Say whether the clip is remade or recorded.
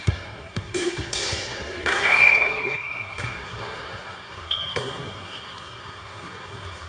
remade